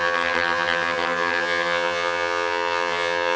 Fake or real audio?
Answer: fake